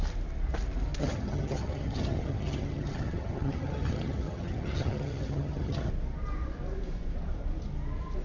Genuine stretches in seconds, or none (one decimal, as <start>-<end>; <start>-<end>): 0.0-1.0; 5.9-8.2